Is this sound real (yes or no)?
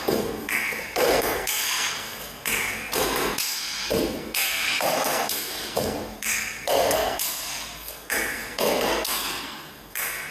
no